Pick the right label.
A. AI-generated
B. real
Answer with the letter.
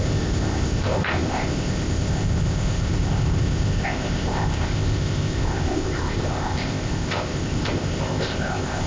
A